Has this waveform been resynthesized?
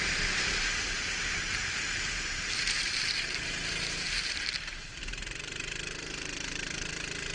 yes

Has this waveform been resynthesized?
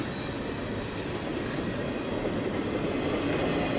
no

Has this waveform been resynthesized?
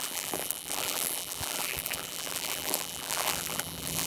yes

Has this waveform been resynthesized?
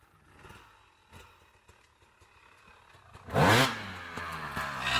no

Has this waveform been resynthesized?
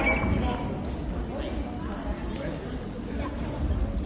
no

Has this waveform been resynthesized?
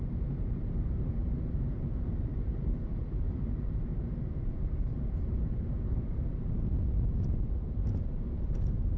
yes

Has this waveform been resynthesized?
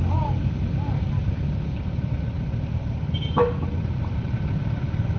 no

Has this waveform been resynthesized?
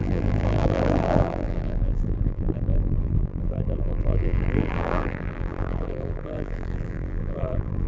yes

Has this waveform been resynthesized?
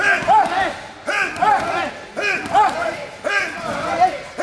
no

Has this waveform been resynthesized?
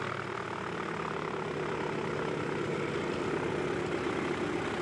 no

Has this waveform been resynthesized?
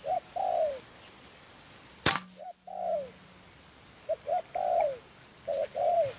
no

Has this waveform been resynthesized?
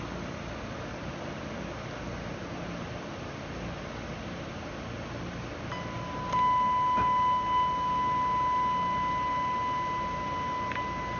no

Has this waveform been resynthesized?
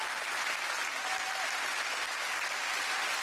no